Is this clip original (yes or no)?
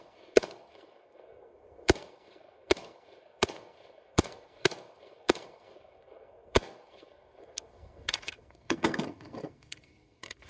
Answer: no